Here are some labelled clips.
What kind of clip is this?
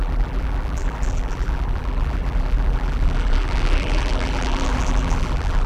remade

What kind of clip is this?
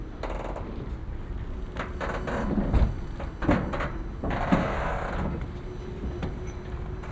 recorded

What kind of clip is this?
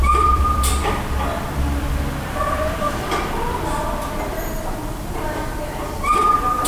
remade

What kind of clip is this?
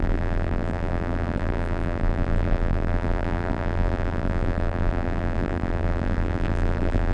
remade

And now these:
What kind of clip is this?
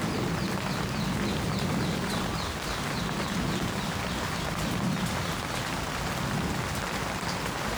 recorded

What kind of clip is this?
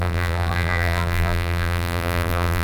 remade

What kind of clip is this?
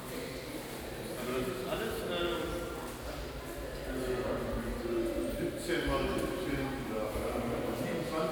recorded